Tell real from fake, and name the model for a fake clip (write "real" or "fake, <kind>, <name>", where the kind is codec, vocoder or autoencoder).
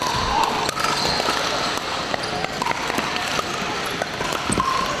real